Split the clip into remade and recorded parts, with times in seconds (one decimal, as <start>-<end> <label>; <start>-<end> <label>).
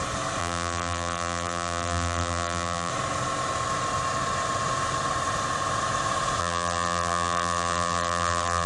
0.0-0.4 recorded; 0.4-2.9 remade; 2.9-6.4 recorded; 6.4-8.7 remade